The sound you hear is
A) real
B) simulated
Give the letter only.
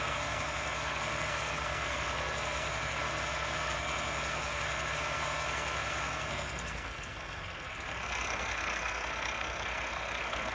B